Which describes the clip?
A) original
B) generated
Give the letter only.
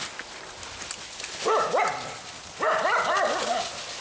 A